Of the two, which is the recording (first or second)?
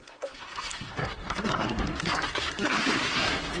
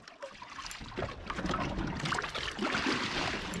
second